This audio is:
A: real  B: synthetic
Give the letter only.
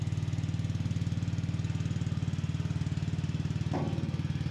A